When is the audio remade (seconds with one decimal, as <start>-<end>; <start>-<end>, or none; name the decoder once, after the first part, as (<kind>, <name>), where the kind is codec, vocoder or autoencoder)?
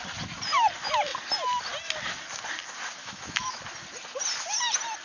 3.0-3.6 (autoencoder, DAC-VAE)